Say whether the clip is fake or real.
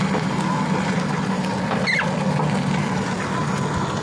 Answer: real